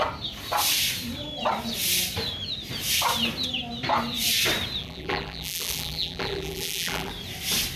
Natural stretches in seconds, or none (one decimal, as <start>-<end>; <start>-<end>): 0.0-4.8; 7.1-7.8